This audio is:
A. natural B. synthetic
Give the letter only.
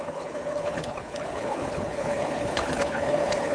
B